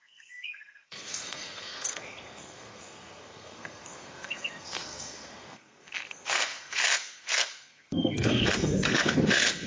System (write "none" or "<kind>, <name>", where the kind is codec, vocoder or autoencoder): codec, SNAC